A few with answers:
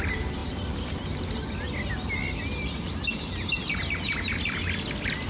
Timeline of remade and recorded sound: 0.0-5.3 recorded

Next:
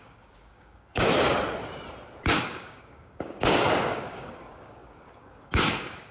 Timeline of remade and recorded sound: 0.0-1.1 remade; 1.1-2.3 recorded; 2.3-6.1 remade

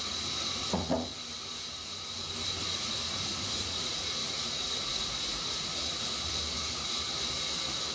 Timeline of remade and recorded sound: 0.0-1.1 remade; 1.1-2.6 recorded; 2.6-6.4 remade; 6.4-7.9 recorded

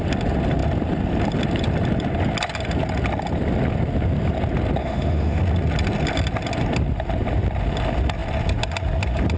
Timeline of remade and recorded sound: 0.0-4.8 recorded; 4.8-5.4 remade; 5.4-9.4 recorded

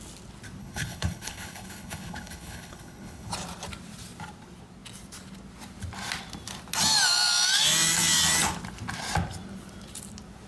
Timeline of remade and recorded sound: 0.0-0.6 recorded; 0.6-3.3 remade; 3.3-10.5 recorded

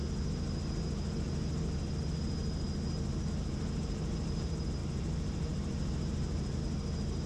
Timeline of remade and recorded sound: 0.0-4.8 recorded; 4.8-6.6 remade; 6.6-7.3 recorded

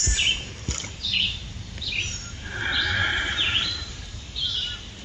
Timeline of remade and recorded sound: 0.0-3.0 recorded; 3.0-4.0 remade; 4.0-5.0 recorded

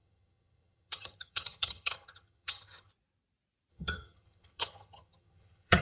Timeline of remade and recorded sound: 0.0-2.9 remade; 2.9-3.7 recorded; 3.7-5.8 remade